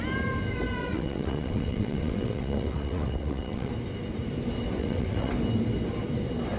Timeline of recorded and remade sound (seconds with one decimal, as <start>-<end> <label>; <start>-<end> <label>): 0.0-0.8 recorded; 0.8-3.7 remade; 3.7-4.8 recorded; 4.8-5.3 remade; 5.3-6.6 recorded